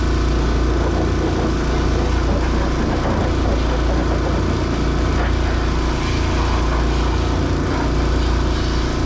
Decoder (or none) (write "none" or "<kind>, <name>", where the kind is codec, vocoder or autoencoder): none